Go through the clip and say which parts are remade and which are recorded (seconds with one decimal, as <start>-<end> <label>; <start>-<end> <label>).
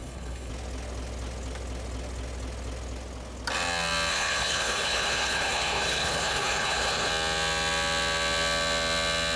0.0-0.5 remade; 0.5-4.1 recorded; 4.1-7.1 remade; 7.1-9.4 recorded